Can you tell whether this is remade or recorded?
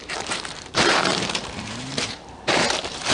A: remade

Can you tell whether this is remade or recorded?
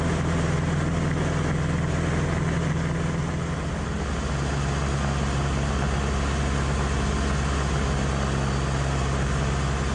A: recorded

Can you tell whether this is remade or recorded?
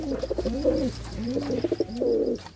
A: remade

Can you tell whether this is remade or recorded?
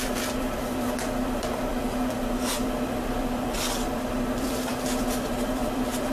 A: remade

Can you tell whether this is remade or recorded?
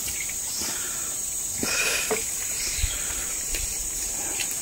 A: remade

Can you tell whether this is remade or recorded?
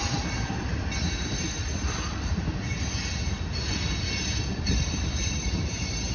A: recorded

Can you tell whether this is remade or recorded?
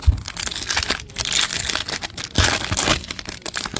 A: recorded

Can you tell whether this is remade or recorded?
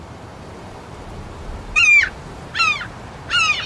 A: remade